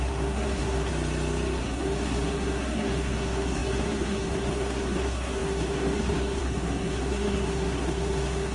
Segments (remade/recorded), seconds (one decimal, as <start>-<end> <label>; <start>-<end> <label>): 0.0-0.9 remade; 0.9-1.6 recorded; 1.6-8.5 remade